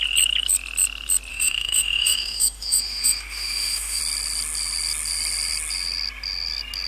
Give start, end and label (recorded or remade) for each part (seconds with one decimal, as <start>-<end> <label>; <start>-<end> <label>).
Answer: 0.0-1.3 recorded; 1.3-4.0 remade; 4.0-6.9 recorded